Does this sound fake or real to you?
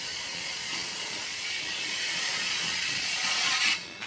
fake